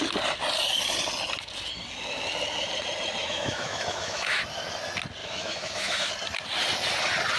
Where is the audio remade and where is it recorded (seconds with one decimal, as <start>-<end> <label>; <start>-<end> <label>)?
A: 0.0-3.2 recorded; 3.2-4.4 remade; 4.4-5.2 recorded; 5.2-6.1 remade; 6.1-7.4 recorded